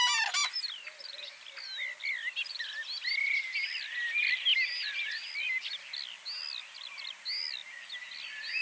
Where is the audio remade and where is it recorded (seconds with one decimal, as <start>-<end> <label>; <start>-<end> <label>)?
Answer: 0.0-4.5 recorded; 4.5-5.3 remade; 5.3-8.6 recorded